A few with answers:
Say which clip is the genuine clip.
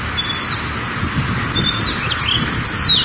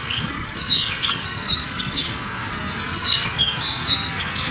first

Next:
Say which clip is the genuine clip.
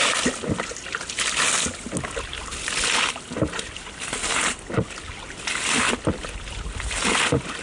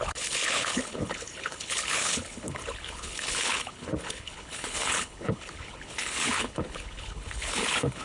first